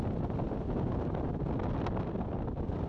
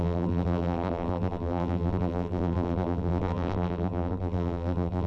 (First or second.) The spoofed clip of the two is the second